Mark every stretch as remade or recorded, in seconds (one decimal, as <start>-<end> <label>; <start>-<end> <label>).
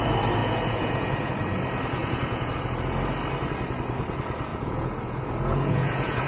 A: 0.0-0.4 recorded; 0.4-1.3 remade; 1.3-2.0 recorded; 2.0-2.5 remade; 2.5-4.5 recorded; 4.5-6.3 remade